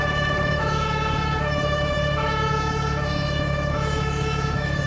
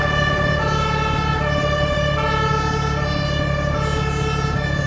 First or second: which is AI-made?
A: first